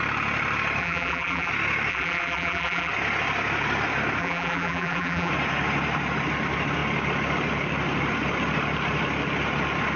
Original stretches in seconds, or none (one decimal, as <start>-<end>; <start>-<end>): 0.0-0.8; 1.5-1.9; 2.9-4.2; 5.3-10.0